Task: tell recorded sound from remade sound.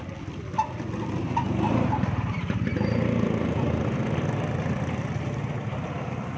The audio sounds recorded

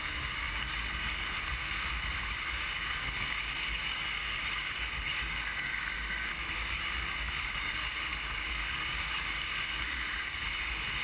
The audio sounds remade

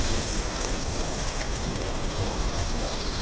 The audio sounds remade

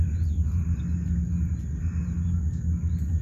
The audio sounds recorded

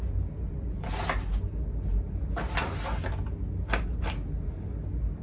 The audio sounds recorded